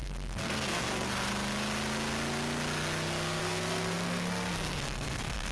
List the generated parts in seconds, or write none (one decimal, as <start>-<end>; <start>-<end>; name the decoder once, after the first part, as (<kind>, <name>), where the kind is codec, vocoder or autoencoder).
0.0-1.3 (codec, SNAC); 3.4-5.5